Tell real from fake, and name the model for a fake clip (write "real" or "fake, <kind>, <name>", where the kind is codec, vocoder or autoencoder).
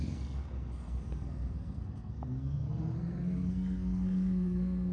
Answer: fake, codec, SNAC